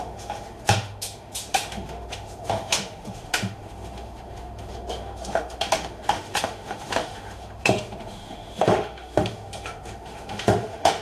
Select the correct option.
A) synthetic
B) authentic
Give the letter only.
A